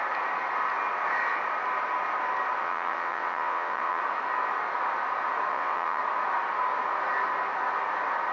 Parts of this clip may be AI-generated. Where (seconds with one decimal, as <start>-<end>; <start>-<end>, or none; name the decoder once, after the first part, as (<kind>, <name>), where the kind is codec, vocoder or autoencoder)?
2.6-4.0 (vocoder, WaveNeXt); 5.5-6.0